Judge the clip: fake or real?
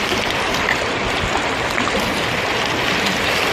real